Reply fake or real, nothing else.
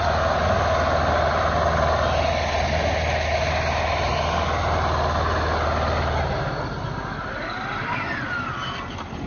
real